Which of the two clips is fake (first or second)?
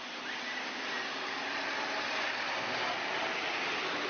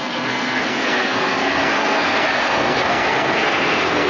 second